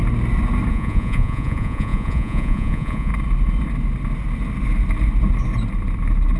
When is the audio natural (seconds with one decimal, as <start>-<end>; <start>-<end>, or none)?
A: 0.0-0.7; 3.1-6.4